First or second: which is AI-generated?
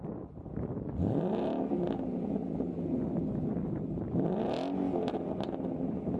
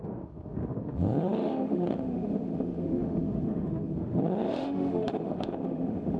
second